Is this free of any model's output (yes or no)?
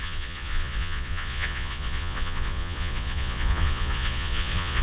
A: no